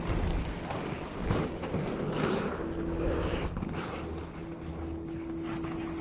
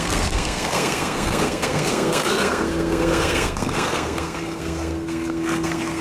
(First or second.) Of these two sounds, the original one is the first